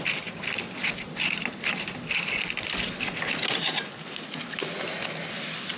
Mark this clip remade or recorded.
recorded